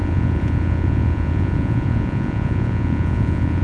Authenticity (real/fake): fake